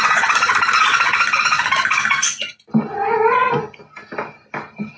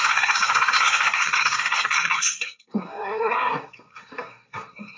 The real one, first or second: first